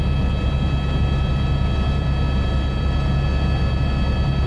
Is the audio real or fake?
real